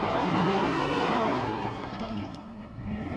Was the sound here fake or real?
fake